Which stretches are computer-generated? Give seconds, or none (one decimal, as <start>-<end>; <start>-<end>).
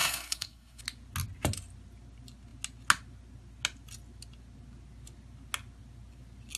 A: 0.0-0.8